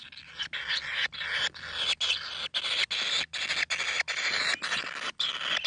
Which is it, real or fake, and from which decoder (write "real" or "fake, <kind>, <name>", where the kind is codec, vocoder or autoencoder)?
real